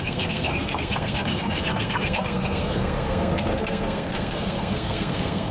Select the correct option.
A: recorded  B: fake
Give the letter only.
B